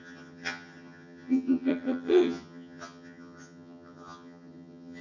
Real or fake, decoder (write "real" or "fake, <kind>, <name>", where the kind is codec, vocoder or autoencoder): fake, vocoder, HiFi-GAN